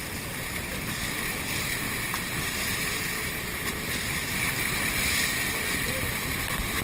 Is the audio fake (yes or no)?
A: yes